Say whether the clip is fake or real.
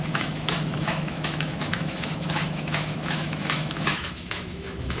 fake